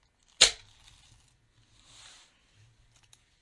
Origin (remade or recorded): recorded